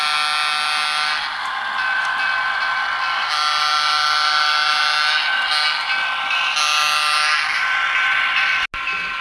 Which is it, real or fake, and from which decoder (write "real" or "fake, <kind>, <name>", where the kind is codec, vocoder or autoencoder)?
real